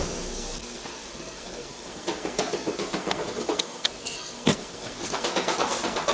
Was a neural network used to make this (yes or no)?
yes